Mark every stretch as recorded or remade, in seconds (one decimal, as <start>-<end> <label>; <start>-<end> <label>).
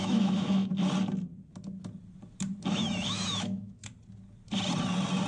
0.0-0.7 remade; 0.7-2.7 recorded; 2.7-3.8 remade; 3.8-5.3 recorded